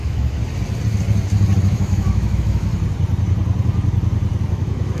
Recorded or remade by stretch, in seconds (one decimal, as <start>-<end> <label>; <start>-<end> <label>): 0.0-0.4 remade; 0.4-1.6 recorded; 1.6-2.7 remade; 2.7-4.5 recorded; 4.5-5.0 remade